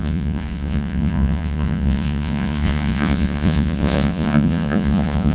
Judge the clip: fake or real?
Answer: fake